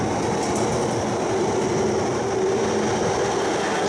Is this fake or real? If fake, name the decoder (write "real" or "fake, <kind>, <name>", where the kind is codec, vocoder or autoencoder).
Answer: real